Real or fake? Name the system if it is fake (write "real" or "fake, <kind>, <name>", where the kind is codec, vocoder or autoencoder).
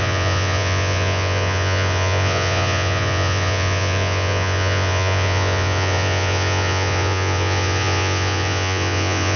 fake, vocoder, Vocos